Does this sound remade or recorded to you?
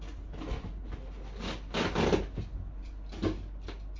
recorded